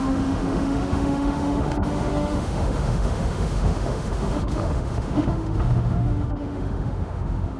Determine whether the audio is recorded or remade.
remade